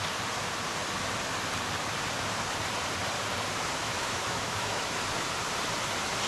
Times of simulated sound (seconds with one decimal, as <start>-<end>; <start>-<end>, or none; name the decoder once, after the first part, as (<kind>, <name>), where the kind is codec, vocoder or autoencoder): 3.8-5.0 (autoencoder, DAC-VAE)